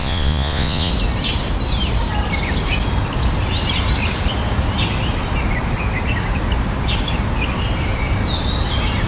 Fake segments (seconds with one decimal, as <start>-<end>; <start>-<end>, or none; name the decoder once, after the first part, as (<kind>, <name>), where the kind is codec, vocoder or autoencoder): 0.0-0.9 (vocoder, Vocos)